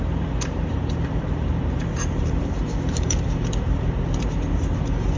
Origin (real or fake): fake